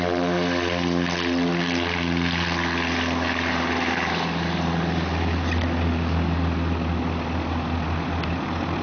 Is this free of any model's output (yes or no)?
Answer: yes